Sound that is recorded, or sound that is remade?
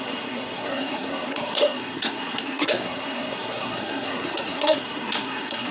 remade